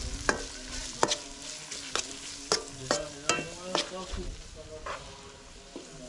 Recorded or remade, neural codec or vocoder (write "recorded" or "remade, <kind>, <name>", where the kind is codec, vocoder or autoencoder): recorded